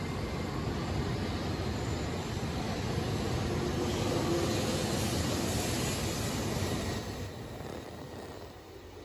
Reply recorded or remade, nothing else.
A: recorded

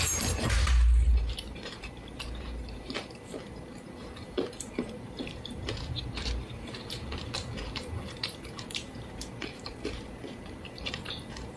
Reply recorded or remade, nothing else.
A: remade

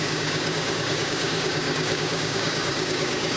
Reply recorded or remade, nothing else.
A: remade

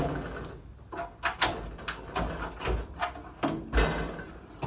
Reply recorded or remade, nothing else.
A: recorded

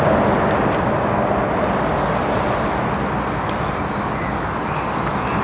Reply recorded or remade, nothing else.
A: recorded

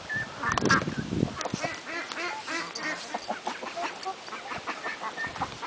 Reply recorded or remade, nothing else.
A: recorded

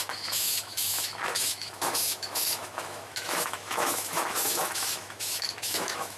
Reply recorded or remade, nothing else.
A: remade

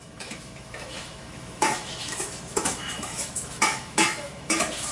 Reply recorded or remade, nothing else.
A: remade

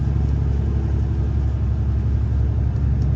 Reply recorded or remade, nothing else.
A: recorded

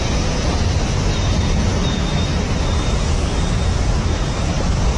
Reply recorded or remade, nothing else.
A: recorded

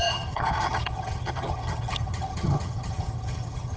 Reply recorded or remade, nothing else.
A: remade